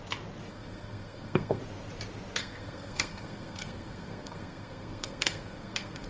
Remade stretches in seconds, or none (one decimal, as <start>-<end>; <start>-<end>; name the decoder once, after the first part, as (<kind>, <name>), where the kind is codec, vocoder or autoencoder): 0.5-1.6 (codec, SNAC); 2.4-6.1